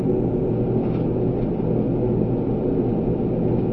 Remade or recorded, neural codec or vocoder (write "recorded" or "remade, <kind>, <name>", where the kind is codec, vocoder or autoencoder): recorded